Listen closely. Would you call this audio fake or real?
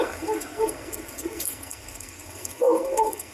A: fake